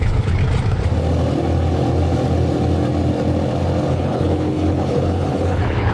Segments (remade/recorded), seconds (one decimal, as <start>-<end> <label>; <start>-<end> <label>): 0.0-0.4 remade; 0.4-3.9 recorded; 3.9-5.9 remade